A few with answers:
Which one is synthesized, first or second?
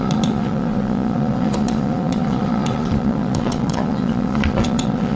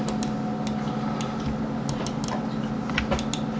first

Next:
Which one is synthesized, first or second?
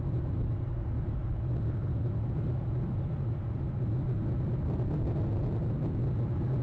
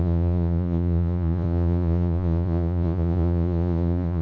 second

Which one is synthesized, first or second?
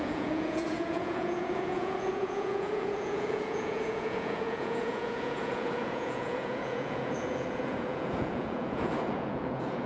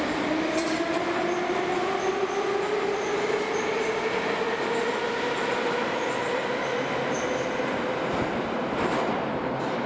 first